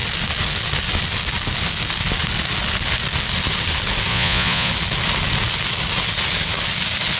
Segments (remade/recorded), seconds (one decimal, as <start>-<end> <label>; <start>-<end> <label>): 0.0-4.1 recorded; 4.1-4.7 remade; 4.7-7.2 recorded